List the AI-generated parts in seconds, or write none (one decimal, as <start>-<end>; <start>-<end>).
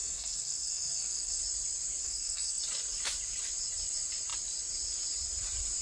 0.0-1.4; 2.0-2.6